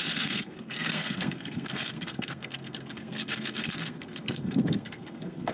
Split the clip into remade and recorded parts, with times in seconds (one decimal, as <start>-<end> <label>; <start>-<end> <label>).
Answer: 0.0-5.5 remade